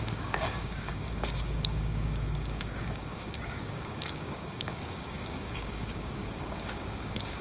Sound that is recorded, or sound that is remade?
remade